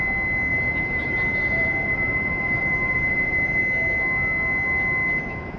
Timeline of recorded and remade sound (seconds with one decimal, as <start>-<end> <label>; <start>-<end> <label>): 0.0-0.5 recorded; 0.5-3.6 remade; 3.6-5.6 recorded